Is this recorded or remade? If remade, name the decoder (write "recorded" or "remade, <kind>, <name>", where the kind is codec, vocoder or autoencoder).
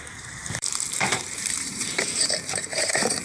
remade, vocoder, BigVGAN v2